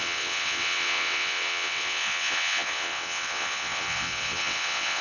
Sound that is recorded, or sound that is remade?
remade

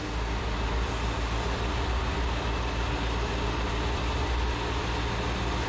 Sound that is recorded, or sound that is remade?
recorded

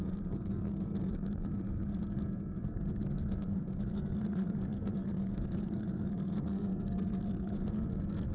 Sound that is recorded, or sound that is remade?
remade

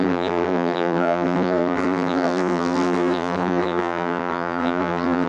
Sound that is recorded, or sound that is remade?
remade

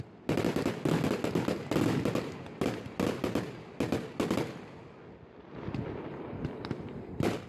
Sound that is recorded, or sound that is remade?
recorded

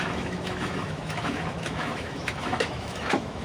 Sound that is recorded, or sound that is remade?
remade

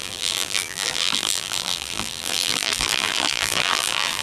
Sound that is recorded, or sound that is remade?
remade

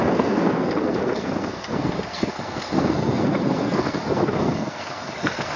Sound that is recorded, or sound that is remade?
remade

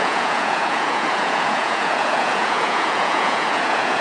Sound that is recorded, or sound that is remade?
remade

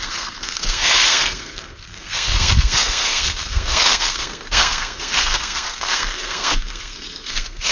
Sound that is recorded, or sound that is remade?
remade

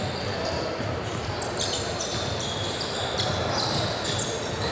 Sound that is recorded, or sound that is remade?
recorded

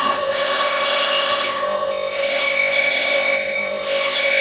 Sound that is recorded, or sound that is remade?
remade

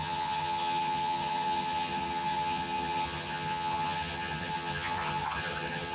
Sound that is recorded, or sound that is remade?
remade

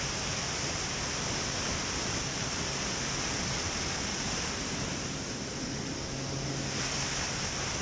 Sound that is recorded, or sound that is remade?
recorded